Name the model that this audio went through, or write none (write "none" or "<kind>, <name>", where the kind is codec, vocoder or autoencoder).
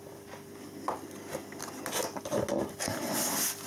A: none